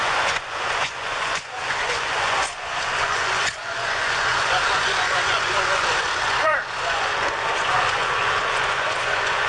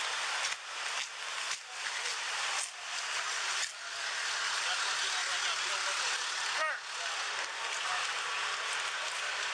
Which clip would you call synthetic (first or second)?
first